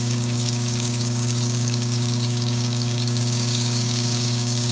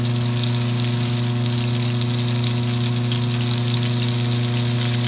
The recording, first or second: second